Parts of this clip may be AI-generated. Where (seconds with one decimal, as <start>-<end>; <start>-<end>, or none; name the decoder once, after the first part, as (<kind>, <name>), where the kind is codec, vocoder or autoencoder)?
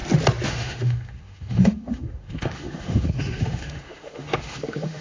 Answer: 0.5-5.0 (autoencoder, DAC-VAE)